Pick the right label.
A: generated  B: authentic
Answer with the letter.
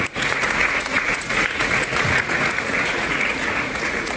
A